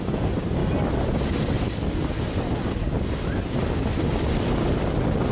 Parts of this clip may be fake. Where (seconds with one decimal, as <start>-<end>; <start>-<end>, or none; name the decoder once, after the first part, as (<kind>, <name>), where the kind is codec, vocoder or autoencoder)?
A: 0.0-0.6 (vocoder, BigVGAN v2); 3.5-3.9